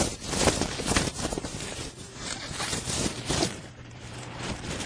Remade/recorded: remade